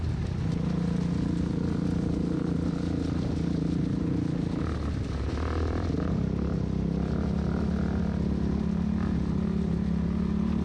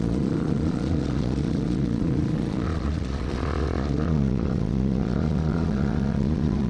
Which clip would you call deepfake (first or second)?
second